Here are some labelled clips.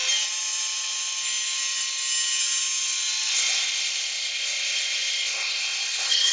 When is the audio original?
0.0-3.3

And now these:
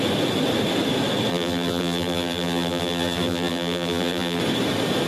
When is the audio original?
0.0-1.3; 4.4-5.1

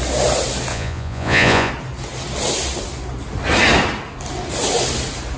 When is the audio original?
0.0-0.7; 1.7-5.4

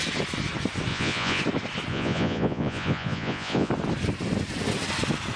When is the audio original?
0.0-0.9; 1.4-1.9; 3.7-5.4

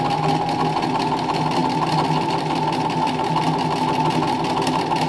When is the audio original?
0.0-5.1

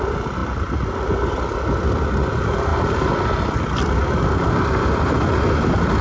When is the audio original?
0.0-6.0

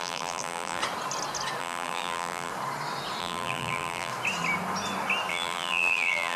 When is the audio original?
0.8-1.6; 2.5-3.2; 4.1-5.3

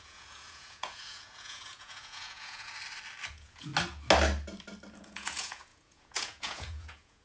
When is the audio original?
2.7-3.3; 3.7-5.0